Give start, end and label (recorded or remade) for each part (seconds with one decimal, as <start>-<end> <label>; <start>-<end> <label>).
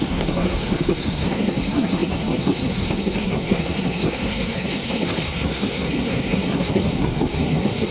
0.0-7.9 remade